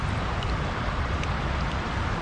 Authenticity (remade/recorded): recorded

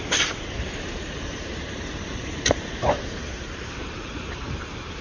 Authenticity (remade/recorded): remade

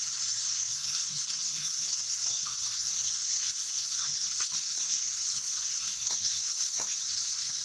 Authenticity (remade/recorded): remade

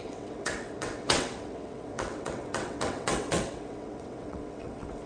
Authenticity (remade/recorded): remade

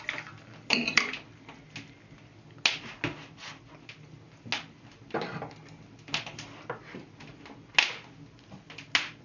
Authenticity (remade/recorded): recorded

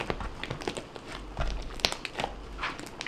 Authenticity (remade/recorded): recorded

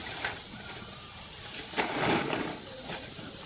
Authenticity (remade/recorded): remade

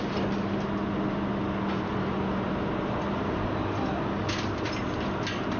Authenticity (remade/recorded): recorded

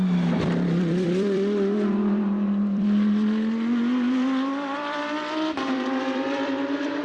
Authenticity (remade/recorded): remade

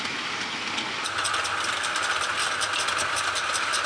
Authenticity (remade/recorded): recorded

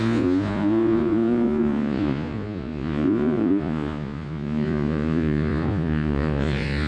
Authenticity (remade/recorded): remade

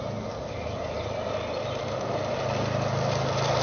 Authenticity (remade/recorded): recorded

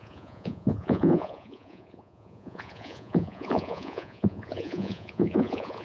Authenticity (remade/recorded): remade